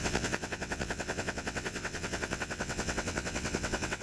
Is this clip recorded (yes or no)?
no